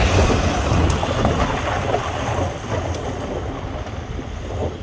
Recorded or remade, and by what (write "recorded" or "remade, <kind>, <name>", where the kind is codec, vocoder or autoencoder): recorded